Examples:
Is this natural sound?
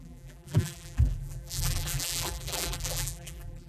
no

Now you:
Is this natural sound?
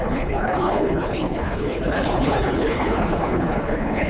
no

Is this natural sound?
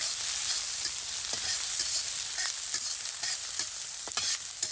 yes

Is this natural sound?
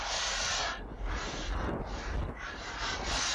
yes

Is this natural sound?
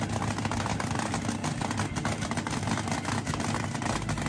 yes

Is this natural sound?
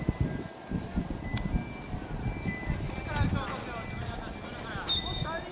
yes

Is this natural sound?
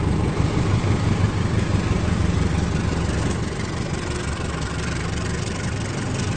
no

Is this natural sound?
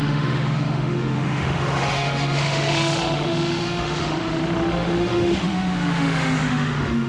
no